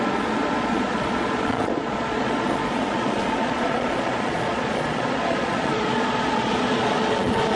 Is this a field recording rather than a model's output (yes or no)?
no